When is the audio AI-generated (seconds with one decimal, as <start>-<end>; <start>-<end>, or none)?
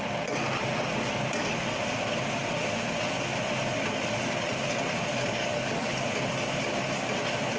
5.3-5.9